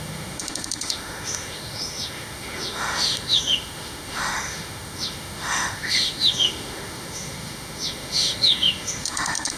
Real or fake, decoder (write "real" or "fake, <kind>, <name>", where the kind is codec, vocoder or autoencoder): fake, autoencoder, DAC-VAE